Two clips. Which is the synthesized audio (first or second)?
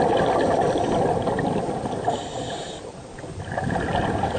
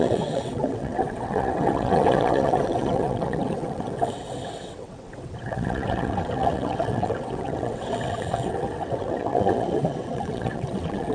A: second